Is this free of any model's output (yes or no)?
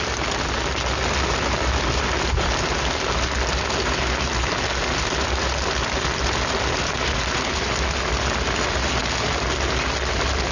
yes